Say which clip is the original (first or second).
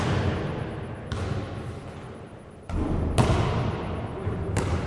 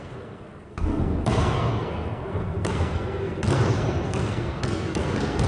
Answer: first